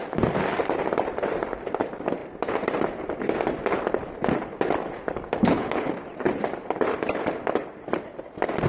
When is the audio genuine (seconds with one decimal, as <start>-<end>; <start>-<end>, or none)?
0.0-5.4; 5.9-8.7